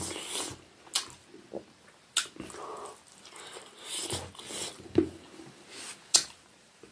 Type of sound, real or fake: real